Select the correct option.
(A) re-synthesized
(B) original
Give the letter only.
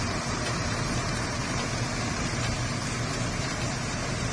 B